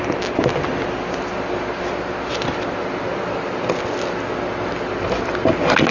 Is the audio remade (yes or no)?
no